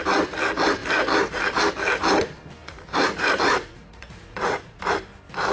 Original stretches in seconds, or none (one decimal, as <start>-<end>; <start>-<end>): 0.0-2.9; 4.8-5.5